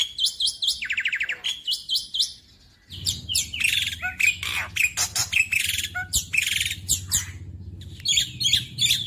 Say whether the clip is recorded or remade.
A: recorded